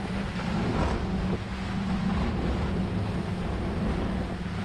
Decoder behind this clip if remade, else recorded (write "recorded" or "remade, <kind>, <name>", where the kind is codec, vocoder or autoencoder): recorded